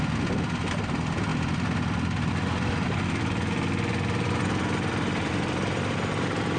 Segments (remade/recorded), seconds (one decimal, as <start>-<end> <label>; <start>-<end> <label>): 0.0-6.6 recorded